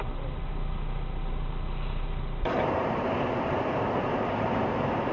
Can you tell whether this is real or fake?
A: fake